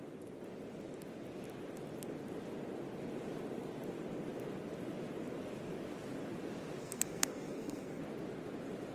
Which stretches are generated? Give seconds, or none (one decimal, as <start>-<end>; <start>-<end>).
6.8-8.0